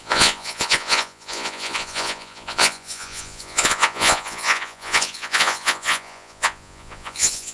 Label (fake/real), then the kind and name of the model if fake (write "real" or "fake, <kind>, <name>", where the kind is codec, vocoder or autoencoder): fake, vocoder, Vocos